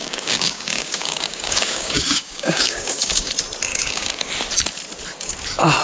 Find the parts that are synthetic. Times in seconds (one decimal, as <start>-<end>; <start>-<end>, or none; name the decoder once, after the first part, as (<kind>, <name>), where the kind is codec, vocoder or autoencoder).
0.0-3.3 (codec, DAC); 3.7-4.3